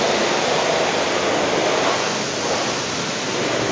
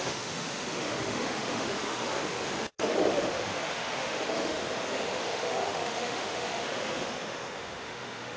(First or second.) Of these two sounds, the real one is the first